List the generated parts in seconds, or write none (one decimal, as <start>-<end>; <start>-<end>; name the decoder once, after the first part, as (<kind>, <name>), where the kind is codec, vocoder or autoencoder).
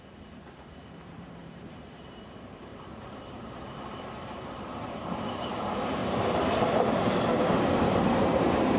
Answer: 0.0-6.0 (vocoder, BigVGAN v2); 6.6-8.8